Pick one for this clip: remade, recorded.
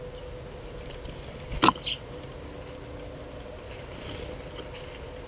recorded